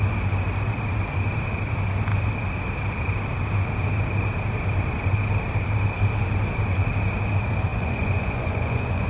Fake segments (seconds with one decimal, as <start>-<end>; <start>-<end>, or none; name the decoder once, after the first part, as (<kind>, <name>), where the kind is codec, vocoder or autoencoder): 7.7-9.1 (vocoder, Vocos)